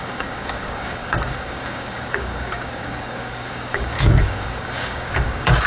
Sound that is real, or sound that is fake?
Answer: fake